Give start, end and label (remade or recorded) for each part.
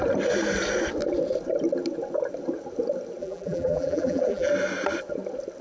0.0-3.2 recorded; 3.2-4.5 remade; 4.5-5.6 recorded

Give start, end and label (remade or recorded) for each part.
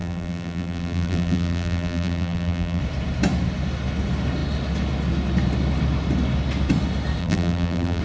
0.0-2.8 remade; 2.8-7.2 recorded; 7.2-8.0 remade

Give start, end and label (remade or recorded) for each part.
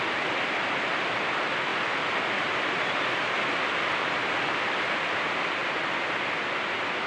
0.0-7.1 recorded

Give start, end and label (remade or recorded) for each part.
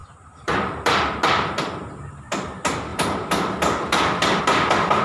0.0-2.3 remade; 2.3-2.9 recorded; 2.9-4.4 remade; 4.4-5.0 recorded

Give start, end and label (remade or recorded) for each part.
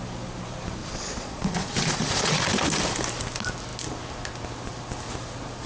0.0-0.8 recorded; 0.8-2.4 remade; 2.4-5.7 recorded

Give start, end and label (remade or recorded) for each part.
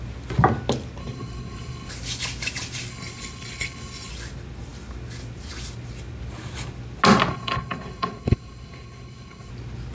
0.0-1.0 recorded; 1.0-1.9 remade; 1.9-2.9 recorded; 2.9-4.1 remade; 4.1-7.3 recorded; 7.3-9.5 remade; 9.5-9.9 recorded